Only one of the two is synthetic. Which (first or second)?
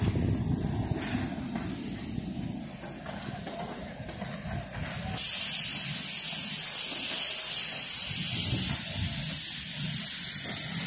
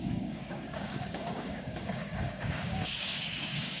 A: second